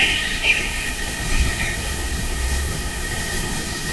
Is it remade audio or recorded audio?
remade